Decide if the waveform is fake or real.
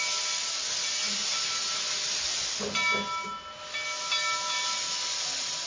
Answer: real